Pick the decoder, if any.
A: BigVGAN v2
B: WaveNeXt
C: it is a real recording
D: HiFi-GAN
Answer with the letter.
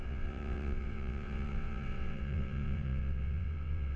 B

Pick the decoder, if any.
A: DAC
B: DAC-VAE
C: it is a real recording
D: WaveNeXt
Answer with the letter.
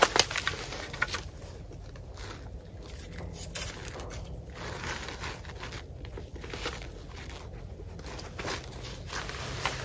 C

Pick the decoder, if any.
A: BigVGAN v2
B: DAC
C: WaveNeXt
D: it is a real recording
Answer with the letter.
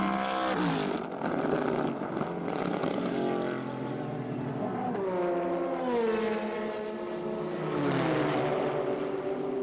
D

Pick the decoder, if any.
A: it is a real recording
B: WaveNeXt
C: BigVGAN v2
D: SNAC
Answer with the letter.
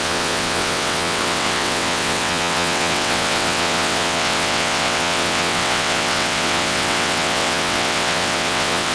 B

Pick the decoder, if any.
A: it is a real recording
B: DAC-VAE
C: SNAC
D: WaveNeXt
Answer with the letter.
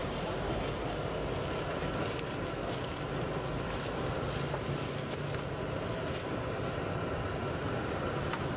A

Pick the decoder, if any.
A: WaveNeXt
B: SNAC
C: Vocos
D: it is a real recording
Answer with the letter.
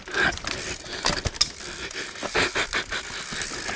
D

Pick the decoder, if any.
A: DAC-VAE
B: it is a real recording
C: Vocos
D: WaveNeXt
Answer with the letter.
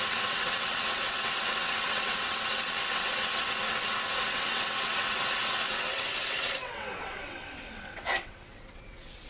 D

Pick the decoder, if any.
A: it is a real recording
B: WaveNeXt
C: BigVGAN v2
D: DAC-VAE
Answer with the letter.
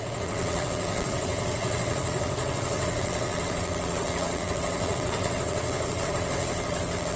B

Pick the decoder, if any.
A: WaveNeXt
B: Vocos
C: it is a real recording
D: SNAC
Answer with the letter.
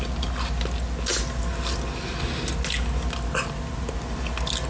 C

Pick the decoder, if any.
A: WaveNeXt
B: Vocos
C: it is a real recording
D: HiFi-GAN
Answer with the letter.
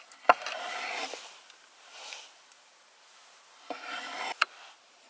C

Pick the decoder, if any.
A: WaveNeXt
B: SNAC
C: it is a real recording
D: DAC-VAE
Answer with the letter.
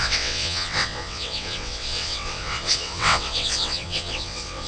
A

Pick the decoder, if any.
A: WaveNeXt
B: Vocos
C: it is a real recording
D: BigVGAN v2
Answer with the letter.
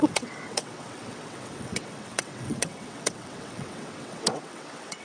A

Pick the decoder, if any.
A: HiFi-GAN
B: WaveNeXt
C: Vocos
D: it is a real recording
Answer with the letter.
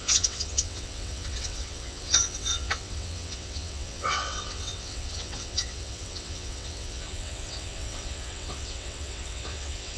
B